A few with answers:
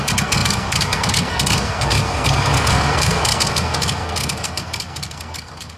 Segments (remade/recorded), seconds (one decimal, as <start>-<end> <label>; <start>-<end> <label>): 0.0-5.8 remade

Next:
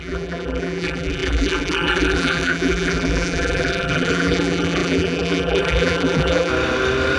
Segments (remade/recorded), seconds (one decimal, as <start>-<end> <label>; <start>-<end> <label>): 0.0-6.5 remade; 6.5-7.2 recorded

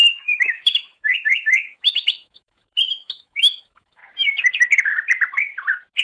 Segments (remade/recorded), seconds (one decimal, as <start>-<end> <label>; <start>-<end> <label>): 0.0-4.0 remade; 4.0-6.0 recorded

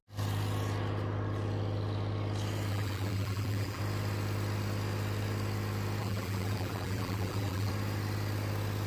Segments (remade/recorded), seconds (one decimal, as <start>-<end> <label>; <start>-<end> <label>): 0.0-2.7 recorded; 2.7-3.8 remade; 3.8-6.0 recorded; 6.0-7.7 remade; 7.7-8.9 recorded

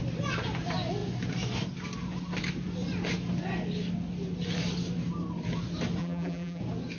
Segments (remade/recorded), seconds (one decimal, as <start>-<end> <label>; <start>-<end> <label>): 0.0-6.0 recorded; 6.0-6.6 remade; 6.6-7.0 recorded

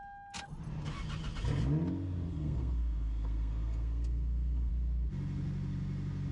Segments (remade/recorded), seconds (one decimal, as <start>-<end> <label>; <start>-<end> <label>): 0.0-2.3 recorded; 2.3-4.7 remade; 4.7-6.3 recorded